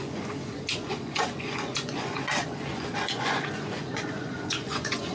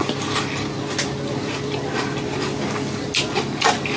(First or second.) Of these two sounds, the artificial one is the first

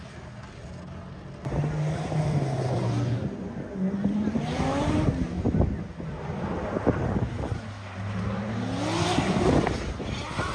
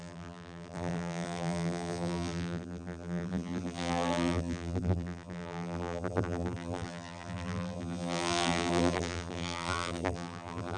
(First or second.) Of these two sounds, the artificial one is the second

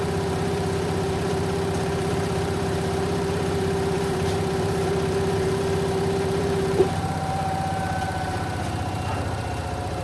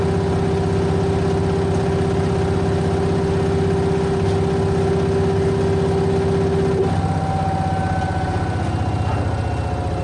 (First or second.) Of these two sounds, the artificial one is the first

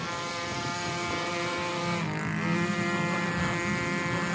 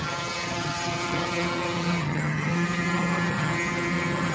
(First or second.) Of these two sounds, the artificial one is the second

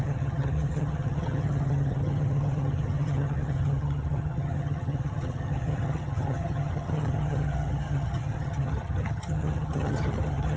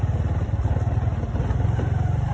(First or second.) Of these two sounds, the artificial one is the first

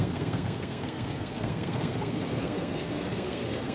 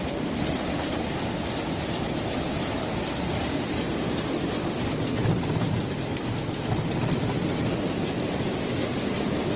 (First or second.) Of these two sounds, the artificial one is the first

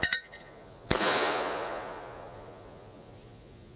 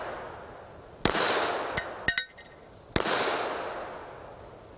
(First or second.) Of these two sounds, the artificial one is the first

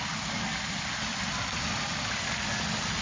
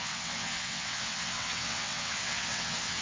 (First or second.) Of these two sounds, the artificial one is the second